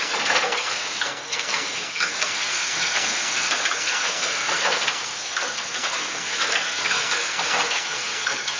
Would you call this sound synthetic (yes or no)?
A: yes